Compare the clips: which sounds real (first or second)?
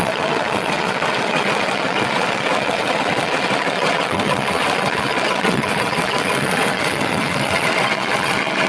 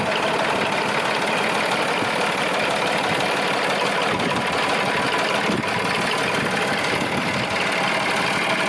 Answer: second